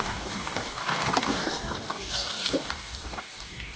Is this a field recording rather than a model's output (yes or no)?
no